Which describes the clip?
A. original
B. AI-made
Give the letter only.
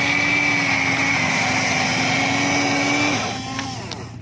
A